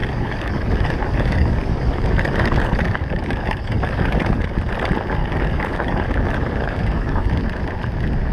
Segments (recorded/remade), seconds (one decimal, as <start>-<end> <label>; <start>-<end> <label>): 0.0-4.5 remade; 4.5-5.2 recorded; 5.2-7.3 remade; 7.3-8.3 recorded